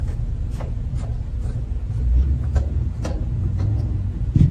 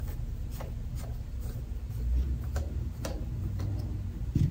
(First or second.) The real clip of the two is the second